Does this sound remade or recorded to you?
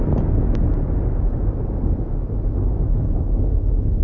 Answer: recorded